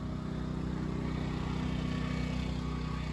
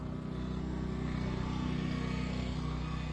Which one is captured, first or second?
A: first